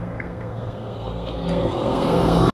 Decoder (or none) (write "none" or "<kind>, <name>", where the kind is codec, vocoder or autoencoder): codec, SNAC